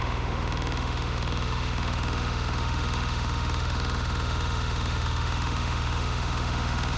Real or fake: fake